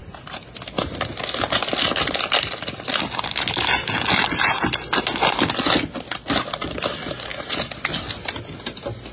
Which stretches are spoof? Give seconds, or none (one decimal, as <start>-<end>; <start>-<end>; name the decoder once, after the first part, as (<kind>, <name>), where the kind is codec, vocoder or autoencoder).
0.0-2.9 (vocoder, BigVGAN v2); 7.3-8.4